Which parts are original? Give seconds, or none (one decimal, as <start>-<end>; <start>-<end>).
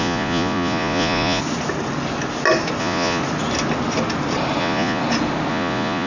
1.4-2.8; 3.2-4.6; 5.0-5.5